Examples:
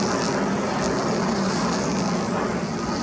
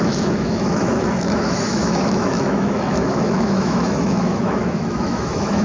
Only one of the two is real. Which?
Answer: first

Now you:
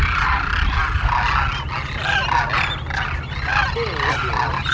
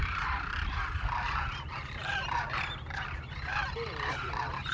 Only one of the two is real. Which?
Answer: first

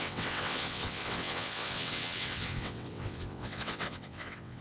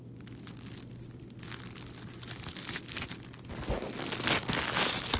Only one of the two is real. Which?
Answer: second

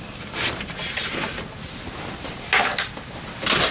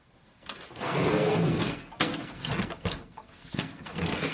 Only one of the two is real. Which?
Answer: first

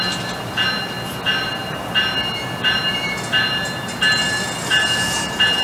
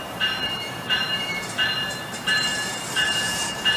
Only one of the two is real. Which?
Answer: first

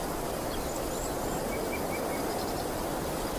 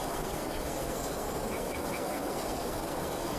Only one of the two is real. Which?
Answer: first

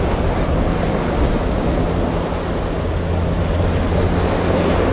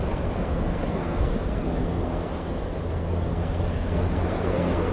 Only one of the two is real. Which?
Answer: first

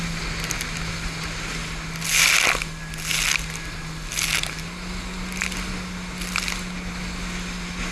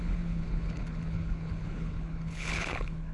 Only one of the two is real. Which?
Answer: first